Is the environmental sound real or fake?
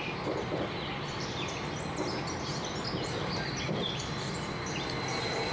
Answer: real